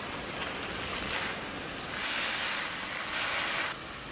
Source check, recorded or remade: recorded